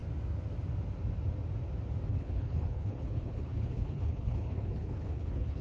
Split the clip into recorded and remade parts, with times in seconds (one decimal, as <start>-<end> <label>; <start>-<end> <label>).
0.0-2.1 recorded; 2.1-5.6 remade